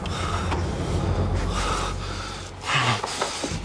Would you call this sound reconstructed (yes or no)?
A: no